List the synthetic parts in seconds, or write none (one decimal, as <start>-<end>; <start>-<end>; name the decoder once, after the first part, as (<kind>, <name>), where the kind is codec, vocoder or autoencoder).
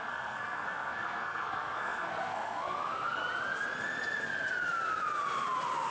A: 0.0-3.2 (codec, SNAC)